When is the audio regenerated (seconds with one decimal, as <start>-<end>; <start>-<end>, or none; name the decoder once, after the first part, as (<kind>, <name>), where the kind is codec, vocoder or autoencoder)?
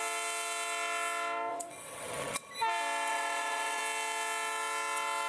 1.5-2.5 (vocoder, WaveNeXt); 3.1-3.8